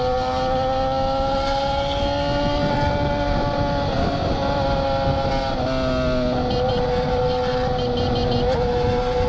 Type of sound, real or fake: real